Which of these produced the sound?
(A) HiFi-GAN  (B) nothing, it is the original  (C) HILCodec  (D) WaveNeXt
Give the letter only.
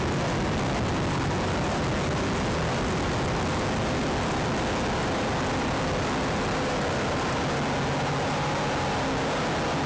B